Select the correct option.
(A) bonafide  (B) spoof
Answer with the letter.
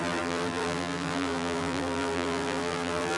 B